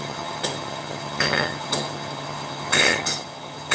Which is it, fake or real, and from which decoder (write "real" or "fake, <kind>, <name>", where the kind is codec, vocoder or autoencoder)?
fake, vocoder, HiFi-GAN